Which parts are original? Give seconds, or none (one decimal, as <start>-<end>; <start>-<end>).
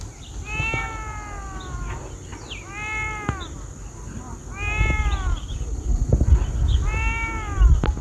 0.0-8.0